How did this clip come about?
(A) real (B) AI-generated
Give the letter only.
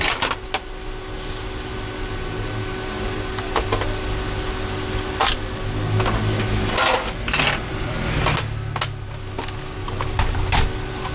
A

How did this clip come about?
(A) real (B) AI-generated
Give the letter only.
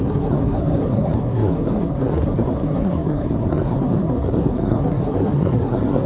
B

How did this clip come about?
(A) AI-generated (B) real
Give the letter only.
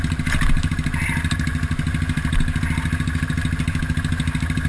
B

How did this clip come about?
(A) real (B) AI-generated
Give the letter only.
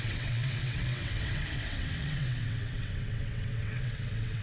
B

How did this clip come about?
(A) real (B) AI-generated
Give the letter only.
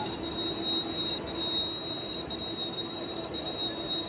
A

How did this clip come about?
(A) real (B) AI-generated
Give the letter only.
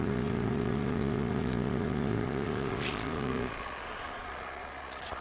B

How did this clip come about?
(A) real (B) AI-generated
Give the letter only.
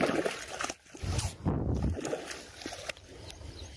A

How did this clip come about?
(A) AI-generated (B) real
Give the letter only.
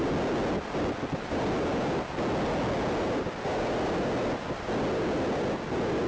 B